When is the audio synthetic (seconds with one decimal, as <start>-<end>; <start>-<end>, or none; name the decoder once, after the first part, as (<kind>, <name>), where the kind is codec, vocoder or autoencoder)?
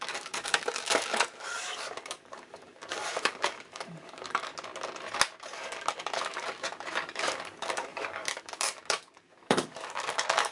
0.0-4.5 (codec, DAC); 5.4-10.5